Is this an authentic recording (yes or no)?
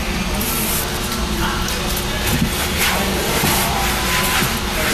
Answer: yes